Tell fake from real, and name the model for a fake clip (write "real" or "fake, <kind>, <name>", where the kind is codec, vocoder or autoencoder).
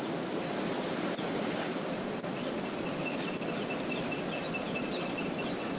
real